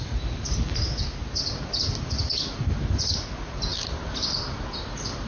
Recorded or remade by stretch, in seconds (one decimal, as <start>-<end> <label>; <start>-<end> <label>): 0.0-5.3 recorded